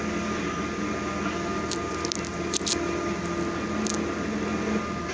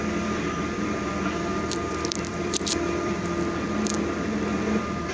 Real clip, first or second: first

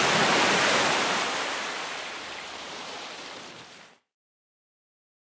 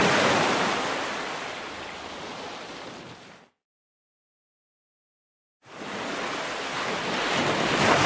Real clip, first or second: second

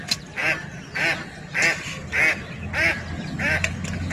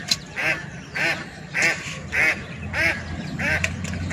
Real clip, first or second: first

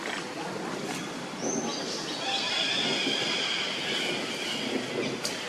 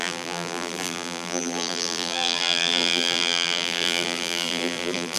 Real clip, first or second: first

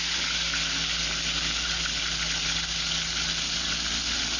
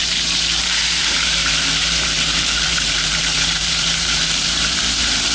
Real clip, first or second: first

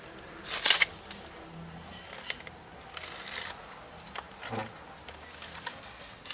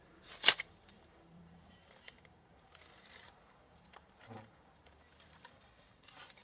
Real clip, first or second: first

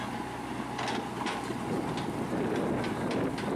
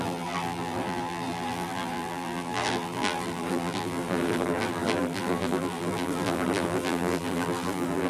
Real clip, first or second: first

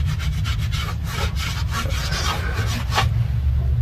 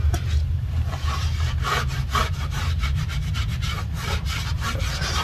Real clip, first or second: first